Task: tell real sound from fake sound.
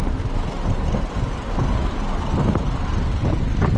real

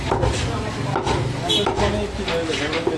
real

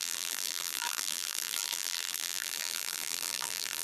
fake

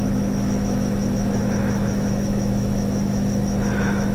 fake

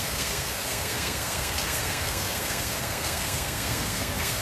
fake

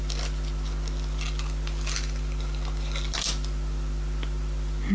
real